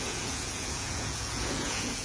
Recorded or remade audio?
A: remade